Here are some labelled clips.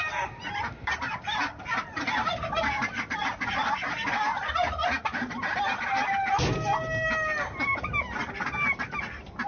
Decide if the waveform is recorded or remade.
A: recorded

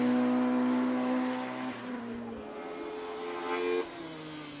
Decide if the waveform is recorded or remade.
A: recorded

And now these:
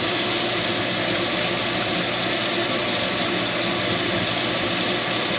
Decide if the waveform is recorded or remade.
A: recorded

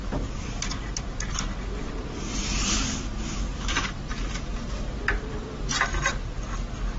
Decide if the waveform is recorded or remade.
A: recorded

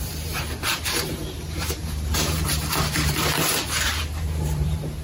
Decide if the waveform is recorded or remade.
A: remade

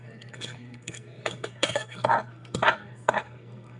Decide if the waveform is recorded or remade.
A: remade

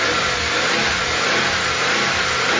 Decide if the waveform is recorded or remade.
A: recorded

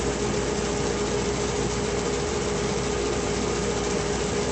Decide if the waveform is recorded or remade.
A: recorded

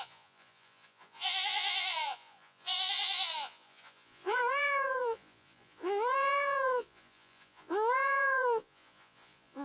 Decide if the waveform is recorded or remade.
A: remade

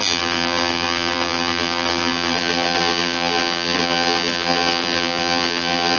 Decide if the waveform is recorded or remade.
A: remade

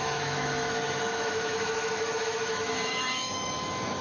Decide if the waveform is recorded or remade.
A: remade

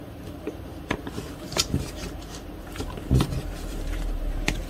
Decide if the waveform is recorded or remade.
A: remade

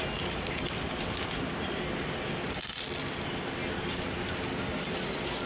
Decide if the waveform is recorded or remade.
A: recorded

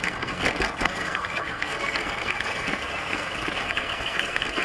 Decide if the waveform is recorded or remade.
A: remade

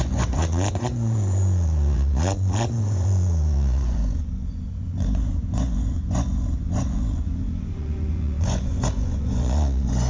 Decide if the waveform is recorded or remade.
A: remade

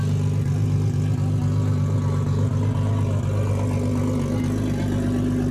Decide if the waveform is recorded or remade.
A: recorded